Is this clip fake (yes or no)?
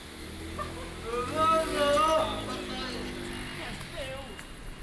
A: no